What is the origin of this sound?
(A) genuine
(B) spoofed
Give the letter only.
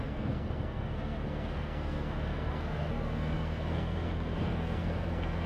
B